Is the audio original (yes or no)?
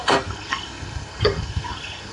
no